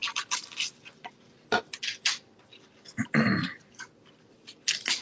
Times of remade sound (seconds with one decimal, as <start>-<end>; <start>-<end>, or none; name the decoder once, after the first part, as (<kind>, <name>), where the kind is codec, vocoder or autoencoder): none